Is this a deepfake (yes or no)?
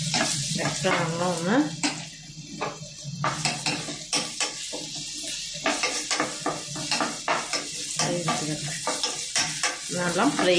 no